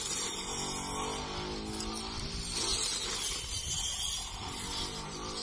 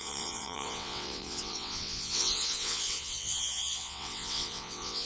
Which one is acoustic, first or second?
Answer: first